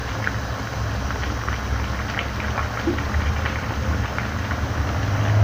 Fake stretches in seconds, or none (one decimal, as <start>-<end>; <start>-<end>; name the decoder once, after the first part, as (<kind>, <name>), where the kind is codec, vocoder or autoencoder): none